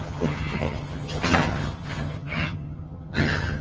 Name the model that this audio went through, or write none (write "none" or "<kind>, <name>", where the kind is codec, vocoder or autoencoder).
vocoder, HiFi-GAN